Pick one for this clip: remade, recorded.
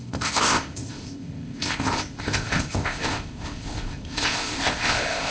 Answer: remade